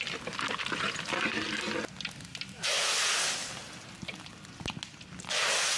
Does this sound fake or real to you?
real